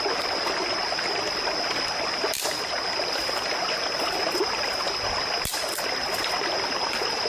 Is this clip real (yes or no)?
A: yes